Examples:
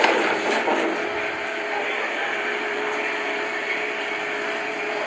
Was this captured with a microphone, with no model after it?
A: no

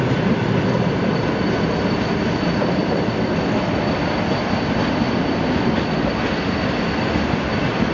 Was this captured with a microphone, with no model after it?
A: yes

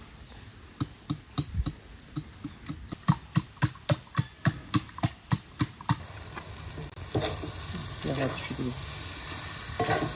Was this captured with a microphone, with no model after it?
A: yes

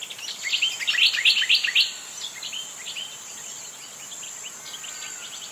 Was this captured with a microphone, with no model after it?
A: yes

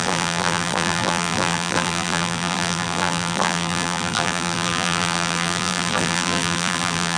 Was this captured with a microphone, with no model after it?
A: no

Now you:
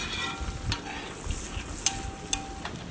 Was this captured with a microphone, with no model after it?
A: yes